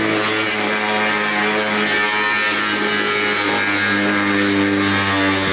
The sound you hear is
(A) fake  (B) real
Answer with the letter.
B